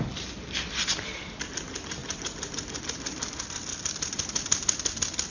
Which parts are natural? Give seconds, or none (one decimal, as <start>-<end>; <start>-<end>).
0.0-5.3